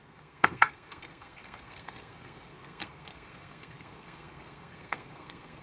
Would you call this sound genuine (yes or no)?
no